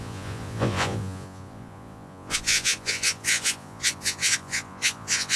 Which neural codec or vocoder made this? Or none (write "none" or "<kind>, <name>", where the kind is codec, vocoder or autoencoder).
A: vocoder, Vocos